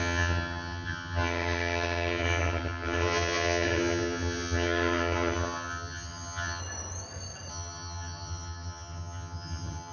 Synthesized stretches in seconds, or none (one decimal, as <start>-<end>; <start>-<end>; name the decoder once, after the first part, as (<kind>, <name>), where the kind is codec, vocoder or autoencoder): 0.0-6.6 (vocoder, HiFi-GAN); 7.5-9.9